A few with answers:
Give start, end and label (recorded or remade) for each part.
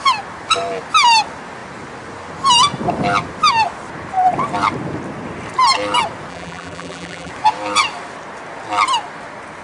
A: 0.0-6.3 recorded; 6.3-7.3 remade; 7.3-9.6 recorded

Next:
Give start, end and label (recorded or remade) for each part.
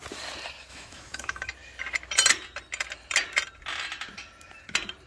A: 0.0-0.7 recorded; 0.7-1.5 remade; 1.5-5.1 recorded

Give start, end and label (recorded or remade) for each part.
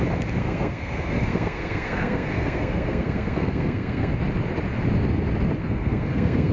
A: 0.0-0.4 recorded; 0.4-4.1 remade; 4.1-5.6 recorded; 5.6-6.5 remade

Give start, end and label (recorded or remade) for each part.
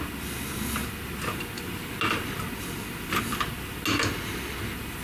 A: 0.0-5.0 recorded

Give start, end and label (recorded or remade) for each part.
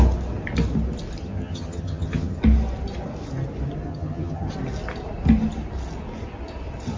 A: 0.0-1.2 recorded; 1.2-2.4 remade; 2.4-3.9 recorded; 3.9-4.5 remade; 4.5-7.0 recorded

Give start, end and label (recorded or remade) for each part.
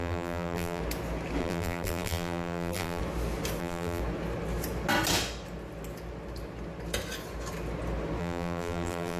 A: 0.0-0.8 remade; 0.8-1.4 recorded; 1.4-3.0 remade; 3.0-3.6 recorded; 3.6-4.0 remade; 4.0-8.2 recorded; 8.2-9.2 remade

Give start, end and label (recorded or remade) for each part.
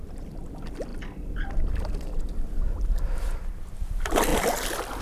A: 0.0-5.0 remade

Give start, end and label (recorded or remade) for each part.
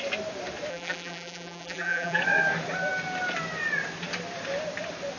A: 0.0-0.7 recorded; 0.7-2.2 remade; 2.2-5.2 recorded